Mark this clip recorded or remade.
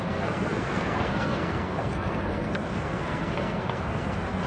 remade